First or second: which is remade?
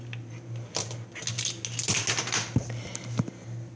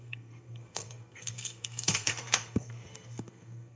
second